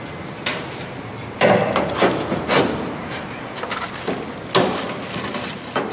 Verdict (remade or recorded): recorded